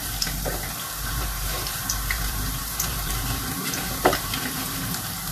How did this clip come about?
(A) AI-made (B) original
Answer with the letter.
A